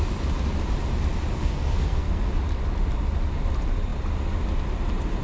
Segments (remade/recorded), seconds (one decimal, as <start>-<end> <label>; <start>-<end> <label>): 0.0-1.3 recorded; 1.3-2.3 remade; 2.3-5.2 recorded